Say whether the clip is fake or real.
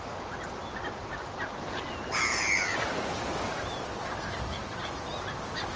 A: real